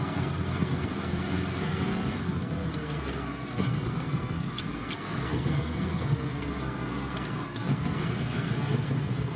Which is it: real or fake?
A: fake